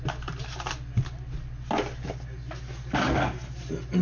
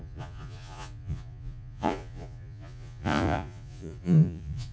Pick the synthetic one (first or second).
second